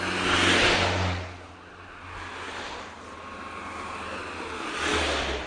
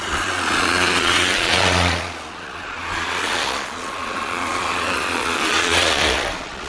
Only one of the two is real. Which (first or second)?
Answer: first